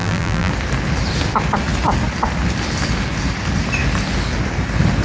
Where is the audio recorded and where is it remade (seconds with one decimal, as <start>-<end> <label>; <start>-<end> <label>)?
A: 0.0-0.5 remade; 0.5-5.0 recorded